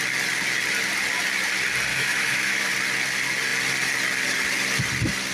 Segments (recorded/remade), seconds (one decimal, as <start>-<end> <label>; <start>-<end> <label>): 0.0-1.9 recorded; 1.9-2.7 remade; 2.7-5.3 recorded